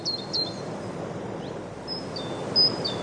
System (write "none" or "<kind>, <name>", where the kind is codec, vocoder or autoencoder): none